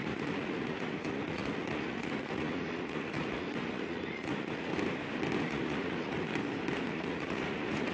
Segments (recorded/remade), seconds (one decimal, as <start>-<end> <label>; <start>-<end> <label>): 0.0-4.7 remade; 4.7-5.4 recorded; 5.4-6.3 remade; 6.3-6.9 recorded; 6.9-7.9 remade